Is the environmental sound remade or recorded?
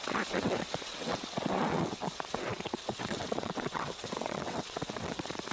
remade